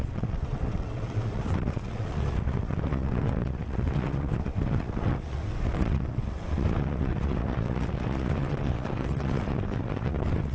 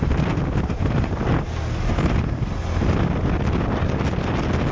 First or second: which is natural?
second